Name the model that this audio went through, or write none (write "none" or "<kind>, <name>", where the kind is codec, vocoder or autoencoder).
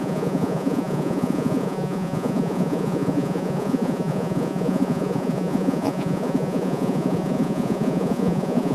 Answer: vocoder, Vocos